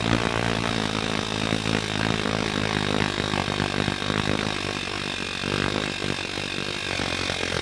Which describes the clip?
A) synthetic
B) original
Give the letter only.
B